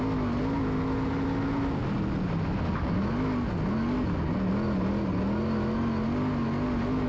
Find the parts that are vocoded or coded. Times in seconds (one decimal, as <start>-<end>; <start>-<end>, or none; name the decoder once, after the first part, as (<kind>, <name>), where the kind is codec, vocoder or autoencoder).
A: none